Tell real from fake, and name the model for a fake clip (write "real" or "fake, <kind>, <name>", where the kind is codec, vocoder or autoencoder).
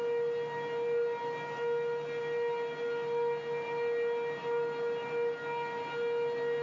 real